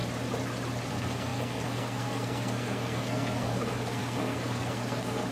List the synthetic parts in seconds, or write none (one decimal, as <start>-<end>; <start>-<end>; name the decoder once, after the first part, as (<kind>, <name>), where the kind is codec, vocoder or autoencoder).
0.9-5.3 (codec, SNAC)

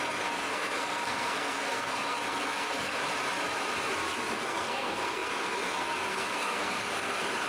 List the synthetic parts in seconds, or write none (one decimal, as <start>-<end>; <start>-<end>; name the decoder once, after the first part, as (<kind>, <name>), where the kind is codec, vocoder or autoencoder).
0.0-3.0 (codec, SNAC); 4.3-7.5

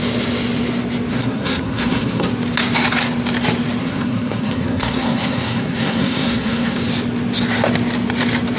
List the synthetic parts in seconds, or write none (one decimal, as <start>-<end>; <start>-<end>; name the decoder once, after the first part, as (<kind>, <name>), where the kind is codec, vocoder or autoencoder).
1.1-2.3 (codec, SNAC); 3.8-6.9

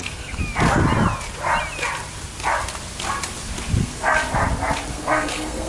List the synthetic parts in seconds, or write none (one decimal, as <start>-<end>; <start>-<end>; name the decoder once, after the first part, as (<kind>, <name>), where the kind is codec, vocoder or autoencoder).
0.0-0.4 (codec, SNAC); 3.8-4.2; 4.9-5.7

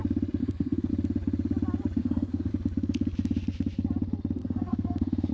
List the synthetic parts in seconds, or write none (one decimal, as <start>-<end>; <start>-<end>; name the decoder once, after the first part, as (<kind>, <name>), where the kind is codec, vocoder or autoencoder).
0.4-0.9 (codec, SNAC); 2.0-2.5; 4.4-5.3

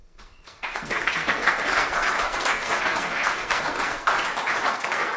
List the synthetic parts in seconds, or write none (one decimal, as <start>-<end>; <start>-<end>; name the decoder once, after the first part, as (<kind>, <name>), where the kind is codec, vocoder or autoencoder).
0.0-4.1 (codec, SNAC); 4.7-5.2